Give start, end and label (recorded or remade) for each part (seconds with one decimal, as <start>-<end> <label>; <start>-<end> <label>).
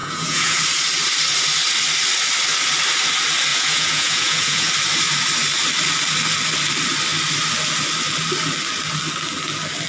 0.0-0.6 remade; 0.6-3.5 recorded; 3.5-4.7 remade; 4.7-9.9 recorded